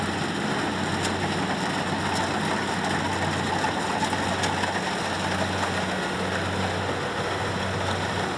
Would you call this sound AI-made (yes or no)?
no